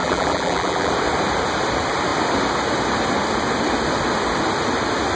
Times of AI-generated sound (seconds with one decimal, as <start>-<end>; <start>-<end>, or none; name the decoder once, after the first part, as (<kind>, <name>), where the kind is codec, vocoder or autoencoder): 0.0-0.9 (vocoder, BigVGAN v2)